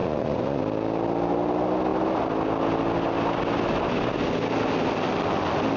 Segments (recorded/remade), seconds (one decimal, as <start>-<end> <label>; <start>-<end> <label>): 0.0-0.6 remade; 0.6-5.8 recorded